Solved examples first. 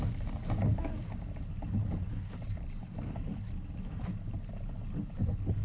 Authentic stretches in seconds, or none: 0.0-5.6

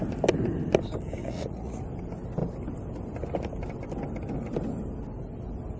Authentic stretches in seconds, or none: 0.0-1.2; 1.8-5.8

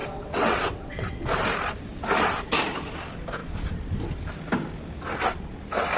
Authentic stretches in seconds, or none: 1.1-6.0

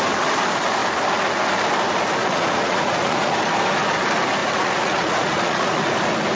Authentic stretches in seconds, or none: 0.0-2.2; 3.4-4.4; 5.8-6.4

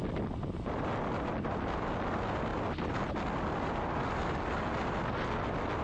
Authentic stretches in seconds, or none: 0.0-5.8

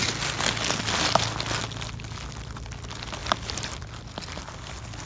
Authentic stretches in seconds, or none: 0.0-5.1